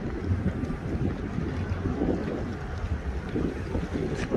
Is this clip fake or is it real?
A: real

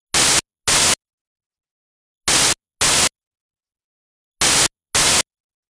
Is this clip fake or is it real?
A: real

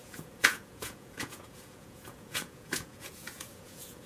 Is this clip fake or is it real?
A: fake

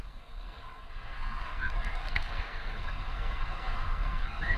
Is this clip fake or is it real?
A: fake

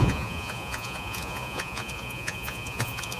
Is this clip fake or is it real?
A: fake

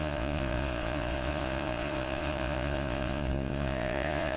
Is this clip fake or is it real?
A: fake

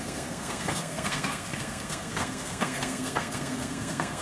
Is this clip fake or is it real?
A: fake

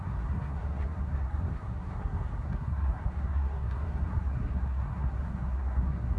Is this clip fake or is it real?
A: fake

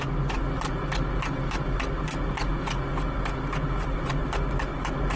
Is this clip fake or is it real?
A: real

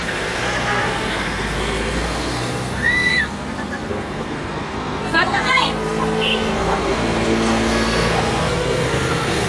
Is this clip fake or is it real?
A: fake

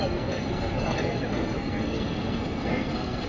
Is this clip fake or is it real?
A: fake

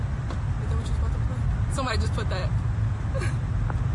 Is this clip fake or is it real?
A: real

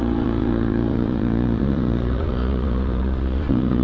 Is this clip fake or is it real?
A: fake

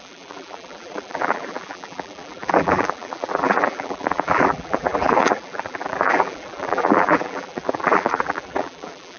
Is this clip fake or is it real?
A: fake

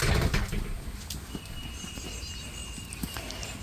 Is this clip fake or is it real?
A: real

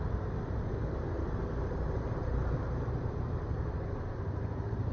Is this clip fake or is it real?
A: fake